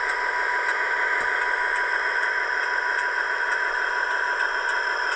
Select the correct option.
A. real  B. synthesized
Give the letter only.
A